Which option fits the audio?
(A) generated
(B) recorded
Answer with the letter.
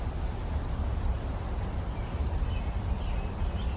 B